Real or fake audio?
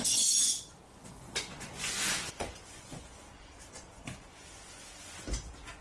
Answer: fake